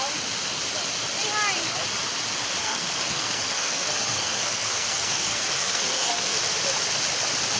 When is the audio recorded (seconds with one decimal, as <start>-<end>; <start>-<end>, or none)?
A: 0.0-2.6; 6.4-7.6